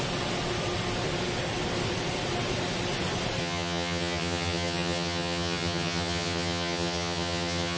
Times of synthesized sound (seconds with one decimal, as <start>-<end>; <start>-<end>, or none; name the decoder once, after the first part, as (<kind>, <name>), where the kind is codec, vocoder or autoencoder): 3.4-7.8 (vocoder, HiFi-GAN)